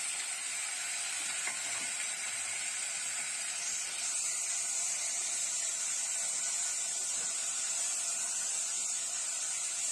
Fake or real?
real